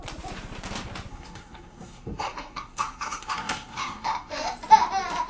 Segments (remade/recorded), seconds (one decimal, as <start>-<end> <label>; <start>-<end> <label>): 0.0-1.1 recorded; 1.1-4.3 remade; 4.3-5.3 recorded